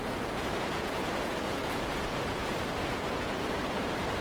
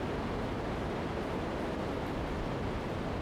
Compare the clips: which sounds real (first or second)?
second